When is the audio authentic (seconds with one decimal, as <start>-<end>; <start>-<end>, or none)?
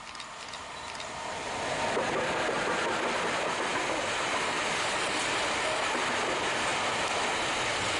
0.0-8.0